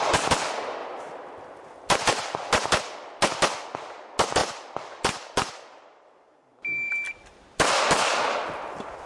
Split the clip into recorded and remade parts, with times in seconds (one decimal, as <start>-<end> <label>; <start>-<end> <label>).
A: 0.0-4.4 recorded; 4.4-6.9 remade; 6.9-9.1 recorded